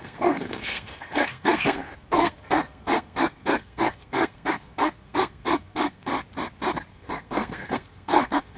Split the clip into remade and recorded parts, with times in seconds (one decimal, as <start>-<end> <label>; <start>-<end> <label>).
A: 0.0-6.1 remade; 6.1-6.9 recorded; 6.9-8.6 remade